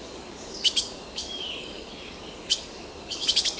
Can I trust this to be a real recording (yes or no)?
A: no